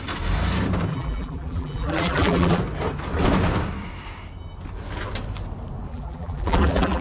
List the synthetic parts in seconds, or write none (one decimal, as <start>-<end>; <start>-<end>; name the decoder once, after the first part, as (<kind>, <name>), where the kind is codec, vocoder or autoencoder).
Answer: 0.9-2.6 (vocoder, BigVGAN v2); 5.9-7.0